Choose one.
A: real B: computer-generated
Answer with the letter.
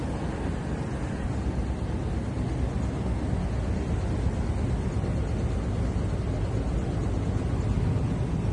A